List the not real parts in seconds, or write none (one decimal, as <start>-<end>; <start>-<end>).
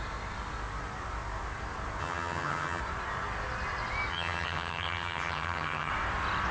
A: 2.0-2.8; 4.1-5.9